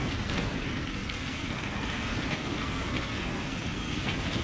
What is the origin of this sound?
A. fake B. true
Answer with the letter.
A